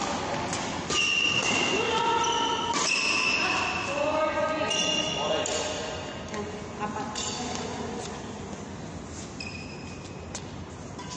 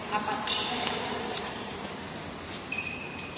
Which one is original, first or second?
first